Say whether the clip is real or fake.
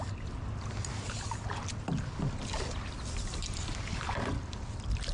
real